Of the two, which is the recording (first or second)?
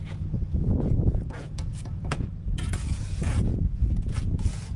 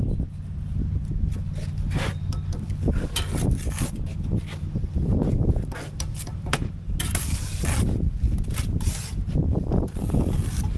second